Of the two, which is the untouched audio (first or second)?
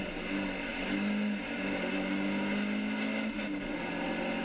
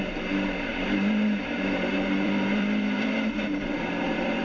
first